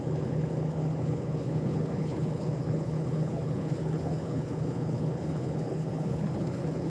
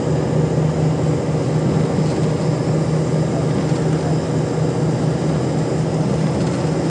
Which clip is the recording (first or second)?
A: second